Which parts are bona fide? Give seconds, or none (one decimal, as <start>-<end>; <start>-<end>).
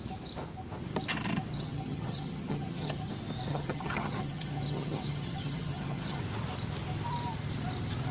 0.0-1.5; 3.1-3.5; 6.2-8.1